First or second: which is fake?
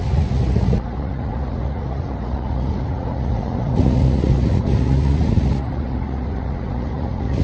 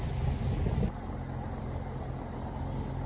first